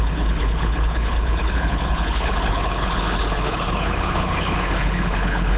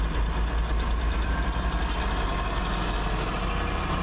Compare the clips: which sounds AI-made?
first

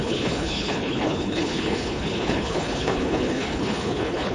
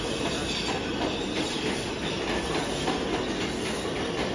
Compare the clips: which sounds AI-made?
first